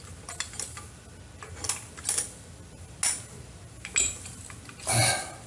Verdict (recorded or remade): recorded